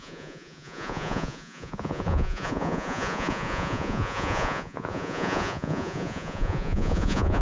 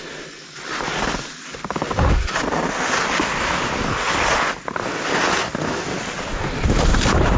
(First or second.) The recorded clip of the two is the second